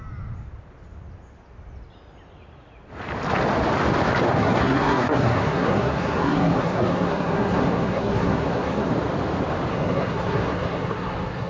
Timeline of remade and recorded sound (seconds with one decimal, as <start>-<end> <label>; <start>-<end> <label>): 0.0-4.4 recorded; 4.4-8.9 remade; 8.9-9.7 recorded; 9.7-11.5 remade